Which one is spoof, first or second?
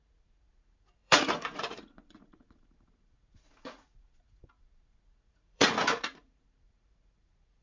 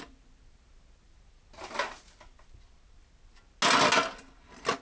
first